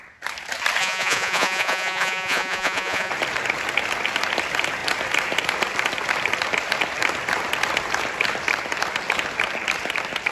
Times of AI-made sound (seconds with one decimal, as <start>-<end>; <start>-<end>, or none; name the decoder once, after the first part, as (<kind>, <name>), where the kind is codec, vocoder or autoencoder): 0.8-3.1 (vocoder, Vocos)